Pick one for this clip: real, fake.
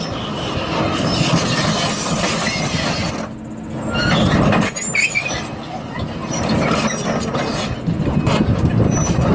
real